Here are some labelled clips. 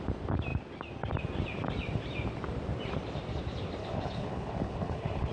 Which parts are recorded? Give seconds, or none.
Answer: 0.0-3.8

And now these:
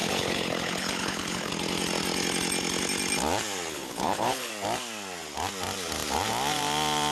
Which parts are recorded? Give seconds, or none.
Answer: 1.5-3.7; 4.5-7.1

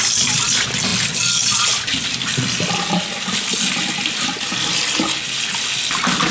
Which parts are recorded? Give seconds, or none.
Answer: 0.0-6.3

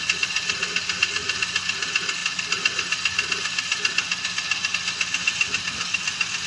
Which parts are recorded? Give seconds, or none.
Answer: 0.0-6.5